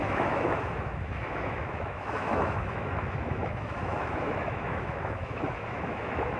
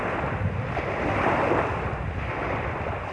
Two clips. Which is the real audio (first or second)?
second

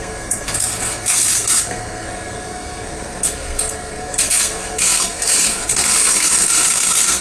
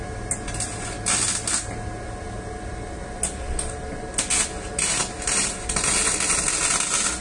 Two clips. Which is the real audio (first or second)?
second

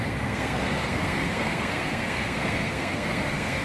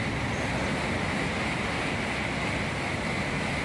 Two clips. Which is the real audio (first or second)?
second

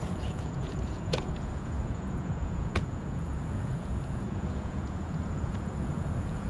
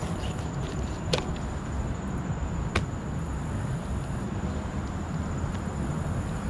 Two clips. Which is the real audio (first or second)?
second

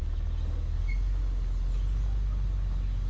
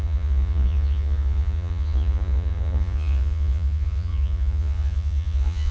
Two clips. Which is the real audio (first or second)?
first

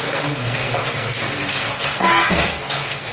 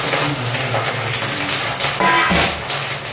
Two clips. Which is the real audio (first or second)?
second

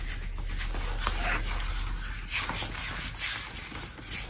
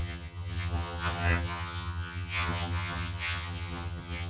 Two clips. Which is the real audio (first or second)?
first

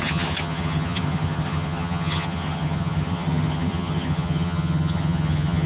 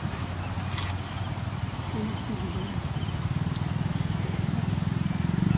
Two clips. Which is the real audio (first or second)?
second